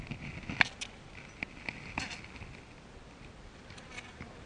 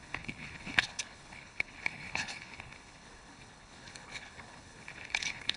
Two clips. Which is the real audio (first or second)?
first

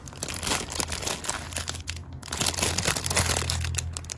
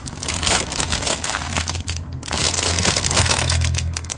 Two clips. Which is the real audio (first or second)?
first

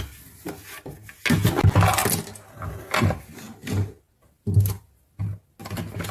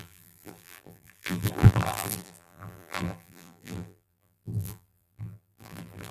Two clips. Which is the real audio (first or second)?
first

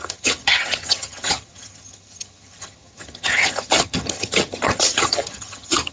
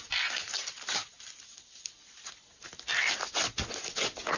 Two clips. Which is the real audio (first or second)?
second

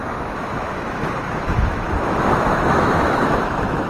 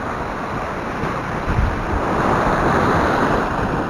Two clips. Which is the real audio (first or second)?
second